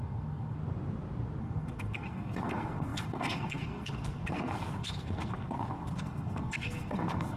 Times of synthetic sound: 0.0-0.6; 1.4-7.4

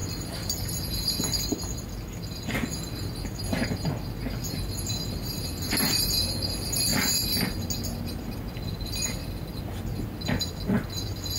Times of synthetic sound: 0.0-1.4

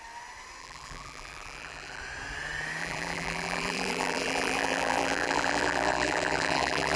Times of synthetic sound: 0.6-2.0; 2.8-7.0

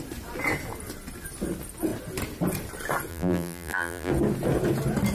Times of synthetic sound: 3.1-4.1

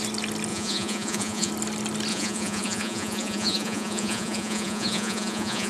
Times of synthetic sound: 0.5-1.5; 2.1-5.7